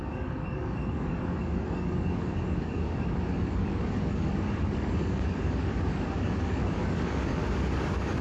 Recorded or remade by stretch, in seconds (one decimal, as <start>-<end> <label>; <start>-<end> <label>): 0.0-8.2 remade